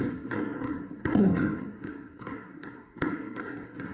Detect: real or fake fake